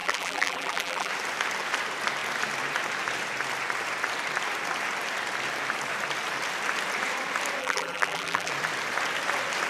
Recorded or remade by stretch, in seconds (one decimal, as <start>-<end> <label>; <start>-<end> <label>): 0.0-1.1 remade; 1.1-7.6 recorded; 7.6-8.5 remade; 8.5-9.7 recorded